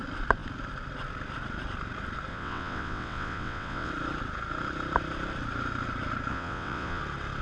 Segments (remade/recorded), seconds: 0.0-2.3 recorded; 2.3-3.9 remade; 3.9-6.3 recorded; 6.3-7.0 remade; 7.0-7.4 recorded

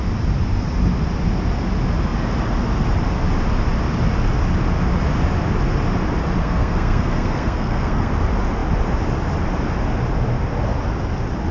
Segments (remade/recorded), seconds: 0.0-6.4 recorded; 6.4-8.1 remade; 8.1-11.5 recorded

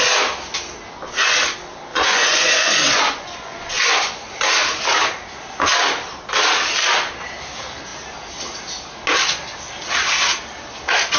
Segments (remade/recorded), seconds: 0.0-1.9 recorded; 1.9-4.3 remade; 4.3-11.2 recorded